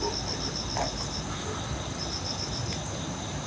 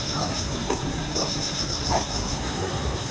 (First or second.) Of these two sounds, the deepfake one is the second